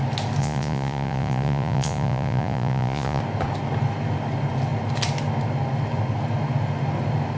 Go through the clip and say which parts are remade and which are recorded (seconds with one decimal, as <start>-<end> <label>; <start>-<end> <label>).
0.0-0.4 recorded; 0.4-3.2 remade; 3.2-7.4 recorded